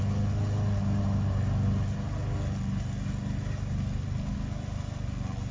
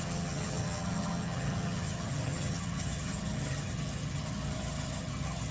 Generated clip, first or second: second